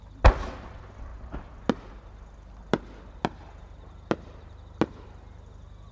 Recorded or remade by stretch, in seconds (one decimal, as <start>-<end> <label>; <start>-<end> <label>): 0.0-5.9 recorded